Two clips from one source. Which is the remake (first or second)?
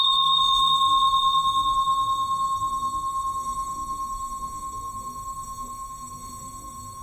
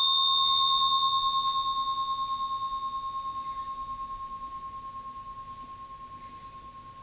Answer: first